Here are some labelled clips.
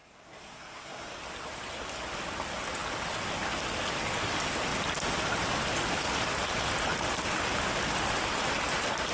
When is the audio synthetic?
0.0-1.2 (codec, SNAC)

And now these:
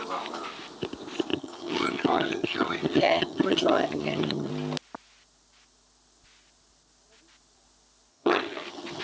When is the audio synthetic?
1.3-4.5 (vocoder, HiFi-GAN); 8.1-9.0

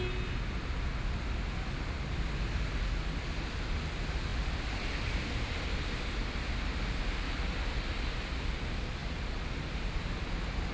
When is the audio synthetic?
none

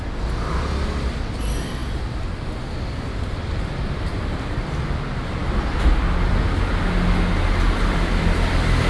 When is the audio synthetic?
none